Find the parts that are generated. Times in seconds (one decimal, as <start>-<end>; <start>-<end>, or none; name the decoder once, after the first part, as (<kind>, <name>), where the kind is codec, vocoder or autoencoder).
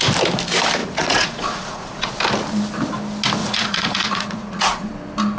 0.8-2.1 (vocoder, Vocos); 3.4-4.9